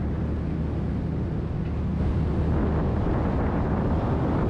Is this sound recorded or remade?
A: recorded